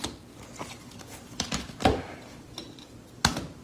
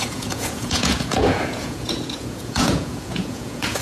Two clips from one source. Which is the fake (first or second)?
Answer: second